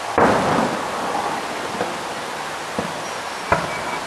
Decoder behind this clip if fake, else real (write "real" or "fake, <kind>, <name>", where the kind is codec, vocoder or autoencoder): real